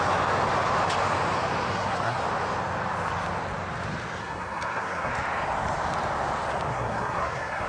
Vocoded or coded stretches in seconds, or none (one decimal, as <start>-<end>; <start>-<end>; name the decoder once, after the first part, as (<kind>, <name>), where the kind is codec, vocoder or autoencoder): 1.7-2.2 (codec, SNAC); 4.2-5.1; 6.7-7.7